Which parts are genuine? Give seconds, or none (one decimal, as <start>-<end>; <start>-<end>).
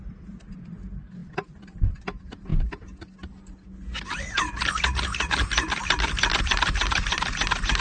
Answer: 2.5-6.4